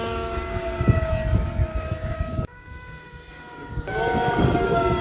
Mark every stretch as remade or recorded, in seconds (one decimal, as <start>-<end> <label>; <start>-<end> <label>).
0.0-1.1 remade; 1.1-1.7 recorded; 1.7-5.0 remade